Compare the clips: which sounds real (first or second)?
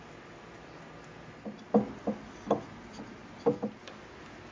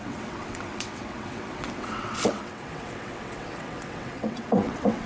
first